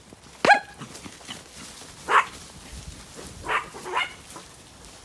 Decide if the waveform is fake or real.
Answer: real